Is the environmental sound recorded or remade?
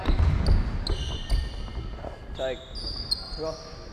recorded